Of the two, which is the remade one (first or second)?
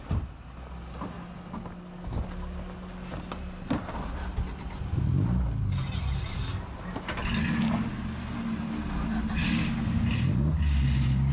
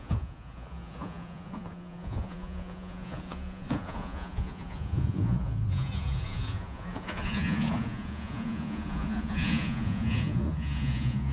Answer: second